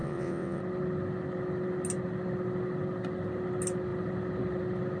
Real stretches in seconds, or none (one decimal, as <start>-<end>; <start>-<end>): 0.6-5.0